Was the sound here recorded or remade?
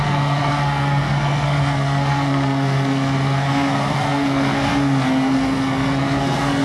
remade